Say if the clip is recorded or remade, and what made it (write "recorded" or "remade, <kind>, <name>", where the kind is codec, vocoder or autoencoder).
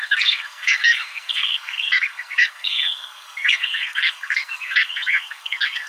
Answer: remade, codec, SNAC